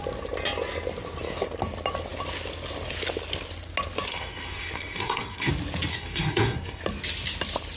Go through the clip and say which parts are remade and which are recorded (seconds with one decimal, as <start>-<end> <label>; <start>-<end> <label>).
0.0-4.1 recorded; 4.1-5.5 remade; 5.5-5.9 recorded; 5.9-6.8 remade; 6.8-7.8 recorded